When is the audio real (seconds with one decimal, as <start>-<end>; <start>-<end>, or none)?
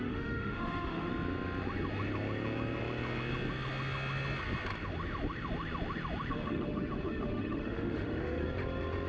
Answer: 1.1-6.3; 8.4-9.1